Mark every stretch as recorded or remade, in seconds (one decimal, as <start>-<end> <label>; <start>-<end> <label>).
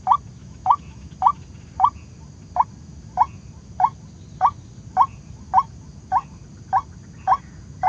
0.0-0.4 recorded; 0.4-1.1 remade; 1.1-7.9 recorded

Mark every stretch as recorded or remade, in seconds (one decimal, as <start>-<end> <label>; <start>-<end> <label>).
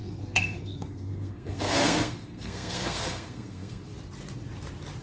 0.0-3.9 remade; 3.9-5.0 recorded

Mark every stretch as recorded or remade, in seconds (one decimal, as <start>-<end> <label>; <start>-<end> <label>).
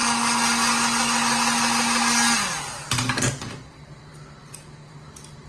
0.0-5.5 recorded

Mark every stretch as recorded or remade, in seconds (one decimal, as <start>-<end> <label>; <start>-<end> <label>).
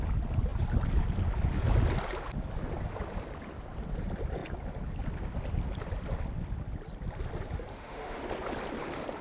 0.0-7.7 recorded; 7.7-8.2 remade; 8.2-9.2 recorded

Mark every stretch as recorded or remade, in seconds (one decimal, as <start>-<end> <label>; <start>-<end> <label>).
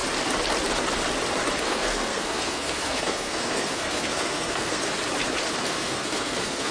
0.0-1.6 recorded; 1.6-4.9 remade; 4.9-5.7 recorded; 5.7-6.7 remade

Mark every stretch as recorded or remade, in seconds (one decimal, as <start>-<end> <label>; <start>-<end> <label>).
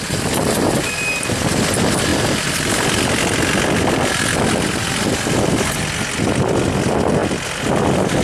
0.0-8.2 recorded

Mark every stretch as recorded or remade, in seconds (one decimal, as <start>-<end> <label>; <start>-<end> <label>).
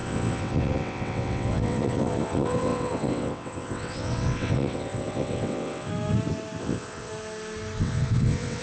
0.0-5.9 remade; 5.9-6.6 recorded; 6.6-7.1 remade; 7.1-7.8 recorded; 7.8-8.6 remade